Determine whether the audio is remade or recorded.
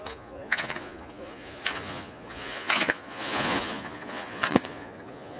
remade